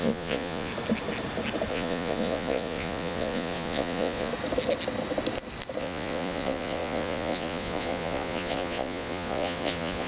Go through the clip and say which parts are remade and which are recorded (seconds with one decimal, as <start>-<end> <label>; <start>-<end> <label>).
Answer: 0.0-0.7 remade; 0.7-1.7 recorded; 1.7-4.3 remade; 4.3-5.8 recorded; 5.8-10.1 remade